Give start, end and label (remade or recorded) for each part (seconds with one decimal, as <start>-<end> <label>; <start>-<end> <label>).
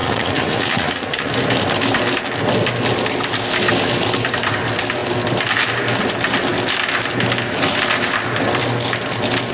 0.0-1.3 remade; 1.3-9.5 recorded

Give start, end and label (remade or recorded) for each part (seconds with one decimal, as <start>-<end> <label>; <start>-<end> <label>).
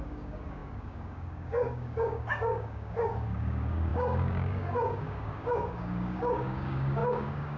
0.0-7.6 remade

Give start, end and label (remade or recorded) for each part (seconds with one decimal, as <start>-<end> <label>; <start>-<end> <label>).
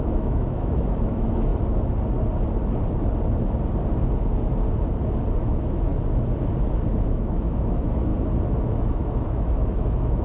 0.0-1.5 remade; 1.5-5.4 recorded; 5.4-5.9 remade; 5.9-7.0 recorded; 7.0-8.1 remade; 8.1-8.6 recorded; 8.6-10.2 remade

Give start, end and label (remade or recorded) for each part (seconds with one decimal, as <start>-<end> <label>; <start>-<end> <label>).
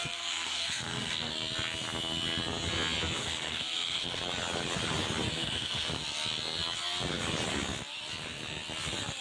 0.0-1.3 remade; 1.3-3.2 recorded; 3.2-4.2 remade; 4.2-5.3 recorded; 5.3-6.0 remade; 6.0-9.2 recorded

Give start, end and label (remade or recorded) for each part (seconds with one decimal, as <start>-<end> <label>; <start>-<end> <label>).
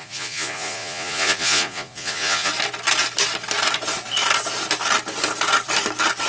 0.0-2.5 remade; 2.5-6.3 recorded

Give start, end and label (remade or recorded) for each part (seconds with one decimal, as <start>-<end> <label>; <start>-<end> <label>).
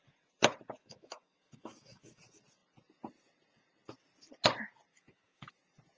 0.0-0.8 recorded; 0.8-2.2 remade; 2.2-4.9 recorded; 4.9-5.5 remade; 5.5-6.0 recorded